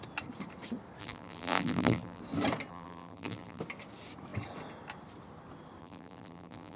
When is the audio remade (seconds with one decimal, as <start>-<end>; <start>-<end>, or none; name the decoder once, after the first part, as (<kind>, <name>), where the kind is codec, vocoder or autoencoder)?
1.0-2.2 (vocoder, BigVGAN v2); 2.7-3.6; 5.8-6.8